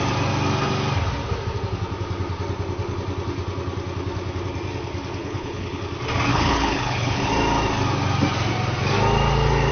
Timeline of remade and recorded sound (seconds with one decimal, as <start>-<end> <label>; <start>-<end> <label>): 0.0-5.2 recorded; 5.2-5.8 remade; 5.8-6.3 recorded; 6.3-7.3 remade; 7.3-9.7 recorded